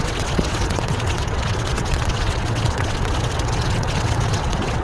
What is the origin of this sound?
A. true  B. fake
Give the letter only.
B